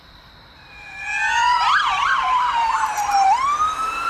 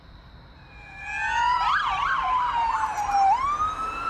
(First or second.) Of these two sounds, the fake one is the first